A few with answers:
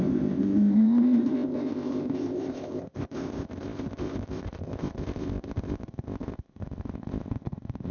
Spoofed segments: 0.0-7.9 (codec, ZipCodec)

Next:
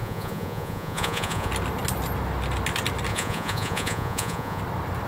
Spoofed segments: 0.0-1.5 (vocoder, Vocos); 3.1-4.6

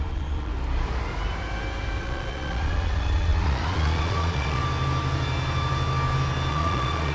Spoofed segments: 0.0-0.5 (vocoder, Vocos); 2.0-4.6; 6.5-7.1

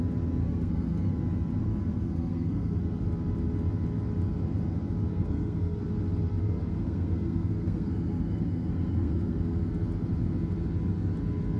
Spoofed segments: 0.4-1.1 (codec, SNAC); 1.6-2.8; 5.1-5.8; 6.3-9.7